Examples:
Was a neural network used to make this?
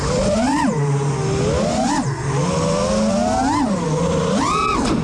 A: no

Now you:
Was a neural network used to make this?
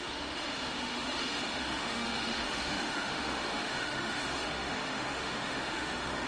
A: yes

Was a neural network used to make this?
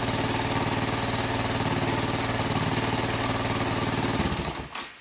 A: no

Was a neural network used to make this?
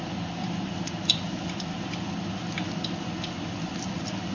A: no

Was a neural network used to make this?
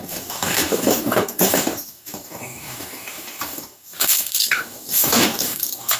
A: yes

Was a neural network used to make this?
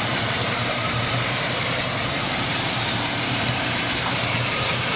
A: yes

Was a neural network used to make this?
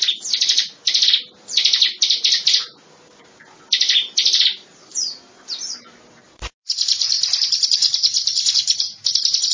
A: no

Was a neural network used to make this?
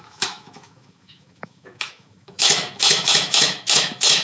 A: yes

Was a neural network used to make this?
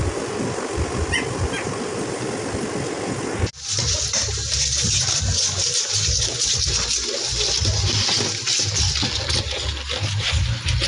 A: no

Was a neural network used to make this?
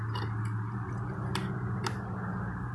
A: no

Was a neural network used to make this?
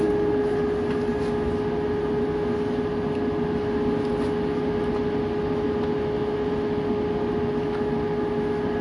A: no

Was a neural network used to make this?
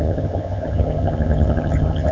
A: yes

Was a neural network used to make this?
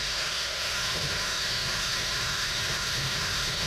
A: yes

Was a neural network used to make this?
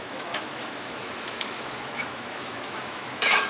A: yes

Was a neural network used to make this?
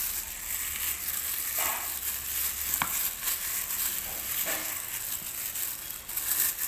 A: no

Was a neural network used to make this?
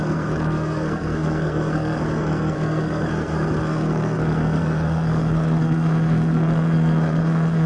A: yes